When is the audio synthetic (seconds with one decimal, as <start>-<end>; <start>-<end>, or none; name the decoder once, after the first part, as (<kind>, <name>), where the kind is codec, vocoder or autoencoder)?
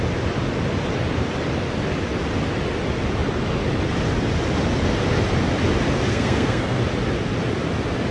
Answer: 6.1-6.8 (codec, SNAC)